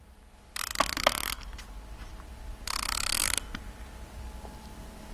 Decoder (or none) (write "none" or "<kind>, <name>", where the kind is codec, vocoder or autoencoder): vocoder, BigVGAN v2